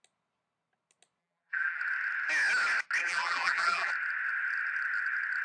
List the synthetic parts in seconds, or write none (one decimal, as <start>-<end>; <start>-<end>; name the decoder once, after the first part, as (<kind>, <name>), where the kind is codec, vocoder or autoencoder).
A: 1.2-1.8 (vocoder, BigVGAN v2); 3.0-3.9